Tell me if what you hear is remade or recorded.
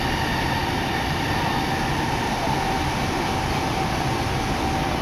recorded